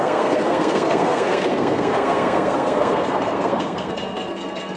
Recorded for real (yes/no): no